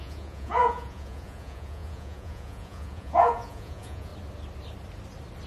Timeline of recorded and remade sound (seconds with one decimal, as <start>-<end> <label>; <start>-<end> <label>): 0.0-4.1 remade; 4.1-5.5 recorded